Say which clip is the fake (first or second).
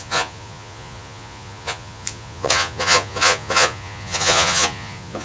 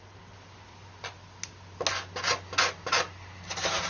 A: first